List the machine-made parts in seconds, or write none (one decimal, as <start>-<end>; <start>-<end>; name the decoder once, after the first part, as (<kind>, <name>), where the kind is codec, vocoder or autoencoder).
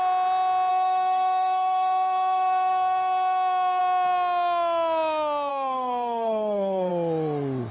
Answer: 0.7-3.8 (codec, SNAC); 5.5-6.9